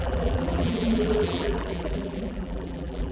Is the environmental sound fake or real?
fake